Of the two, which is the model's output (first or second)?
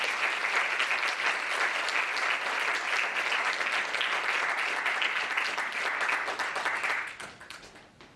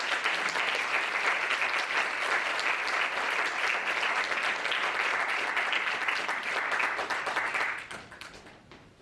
second